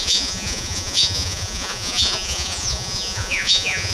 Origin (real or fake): fake